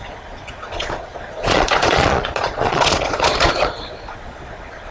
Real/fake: fake